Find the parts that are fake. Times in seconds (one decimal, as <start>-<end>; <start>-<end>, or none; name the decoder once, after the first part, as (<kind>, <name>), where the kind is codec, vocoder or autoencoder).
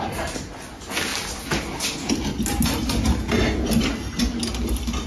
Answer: none